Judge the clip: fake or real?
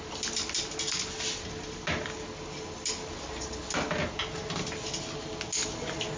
real